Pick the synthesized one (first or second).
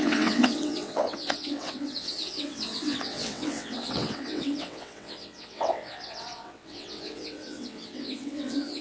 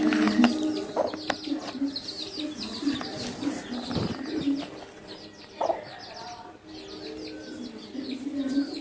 first